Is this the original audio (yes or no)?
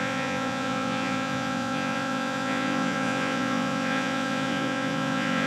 no